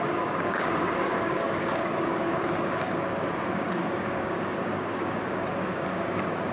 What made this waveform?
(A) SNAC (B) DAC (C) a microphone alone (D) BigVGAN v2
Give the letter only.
B